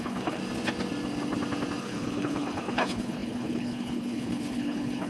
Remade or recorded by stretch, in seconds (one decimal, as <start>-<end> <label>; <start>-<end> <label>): 0.0-0.4 remade; 0.4-1.8 recorded; 1.8-5.1 remade